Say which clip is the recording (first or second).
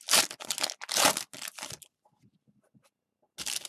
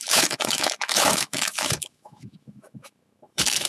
first